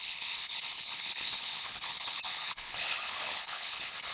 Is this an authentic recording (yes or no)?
no